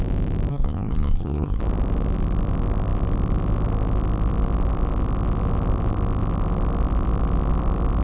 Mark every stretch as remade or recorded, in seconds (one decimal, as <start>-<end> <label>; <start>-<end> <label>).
0.0-0.5 recorded; 0.5-1.6 remade; 1.6-8.0 recorded